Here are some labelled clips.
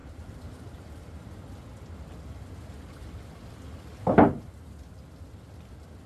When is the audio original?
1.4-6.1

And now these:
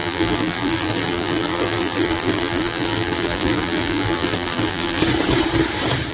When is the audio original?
5.0-6.1

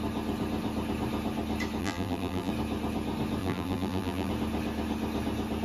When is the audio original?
0.0-1.8; 2.5-3.4; 4.3-5.6

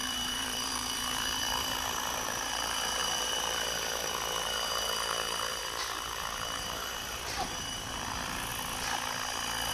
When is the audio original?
8.5-9.7

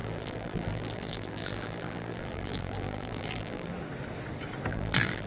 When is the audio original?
3.7-4.7

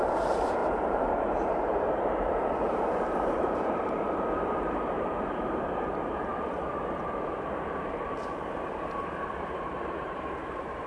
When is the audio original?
6.3-7.0

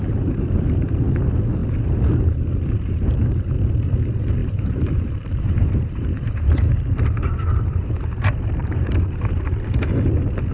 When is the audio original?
0.0-4.4; 8.1-8.6; 9.4-10.5

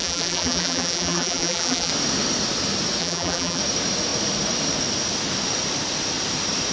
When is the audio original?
1.9-3.0; 3.6-6.7